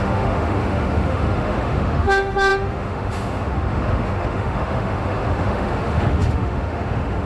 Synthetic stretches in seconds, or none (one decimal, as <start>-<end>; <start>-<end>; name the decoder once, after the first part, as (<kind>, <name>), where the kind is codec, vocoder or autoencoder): 0.0-7.3 (autoencoder, DAC-VAE)